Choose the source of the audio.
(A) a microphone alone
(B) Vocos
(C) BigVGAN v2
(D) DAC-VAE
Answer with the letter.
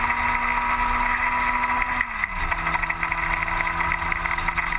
A